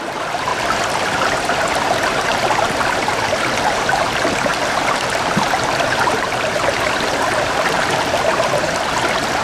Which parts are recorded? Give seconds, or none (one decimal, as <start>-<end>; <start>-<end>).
0.0-0.5; 1.2-4.5; 9.0-9.4